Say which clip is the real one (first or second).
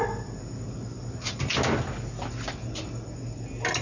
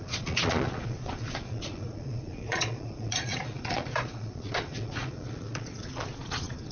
first